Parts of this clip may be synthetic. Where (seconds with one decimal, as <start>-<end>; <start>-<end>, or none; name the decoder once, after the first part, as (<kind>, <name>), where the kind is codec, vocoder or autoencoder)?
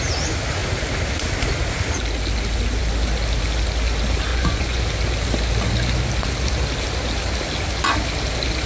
4.3-4.8 (vocoder, Vocos)